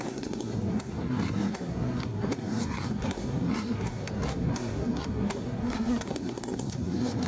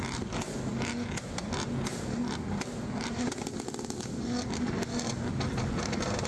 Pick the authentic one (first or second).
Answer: second